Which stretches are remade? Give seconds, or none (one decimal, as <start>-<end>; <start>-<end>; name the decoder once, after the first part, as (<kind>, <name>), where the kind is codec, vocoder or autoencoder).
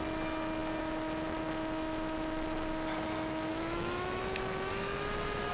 3.5-4.2 (autoencoder, DAC-VAE); 4.7-5.5